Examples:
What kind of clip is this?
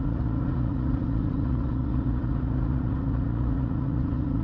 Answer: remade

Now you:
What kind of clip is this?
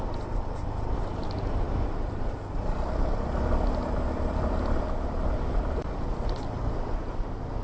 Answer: recorded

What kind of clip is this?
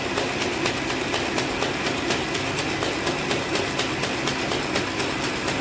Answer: recorded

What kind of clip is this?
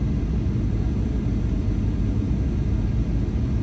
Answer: recorded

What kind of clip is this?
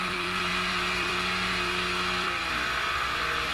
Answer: remade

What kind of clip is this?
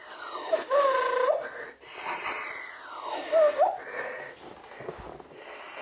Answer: recorded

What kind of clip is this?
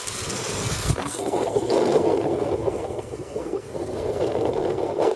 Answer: remade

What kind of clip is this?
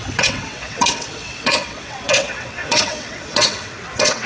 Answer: remade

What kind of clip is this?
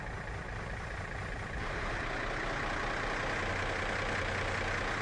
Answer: recorded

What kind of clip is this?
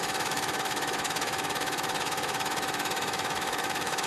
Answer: remade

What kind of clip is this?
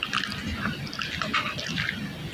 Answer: recorded